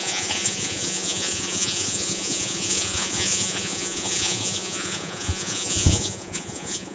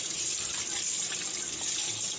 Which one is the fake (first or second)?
first